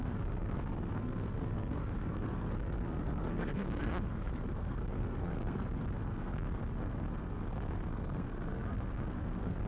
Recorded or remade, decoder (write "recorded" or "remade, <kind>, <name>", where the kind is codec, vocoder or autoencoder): remade, codec, SNAC